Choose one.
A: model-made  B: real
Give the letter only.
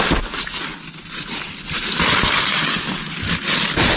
B